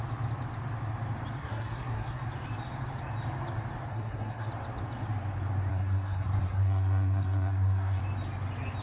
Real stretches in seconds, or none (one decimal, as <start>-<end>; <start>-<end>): 0.0-1.4; 2.2-3.9; 4.5-5.7; 8.0-8.8